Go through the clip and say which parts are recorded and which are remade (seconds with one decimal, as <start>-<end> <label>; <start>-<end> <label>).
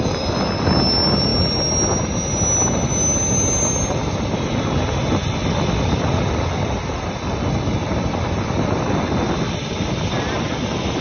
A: 0.0-11.0 recorded